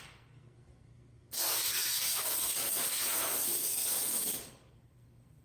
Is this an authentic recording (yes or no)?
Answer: no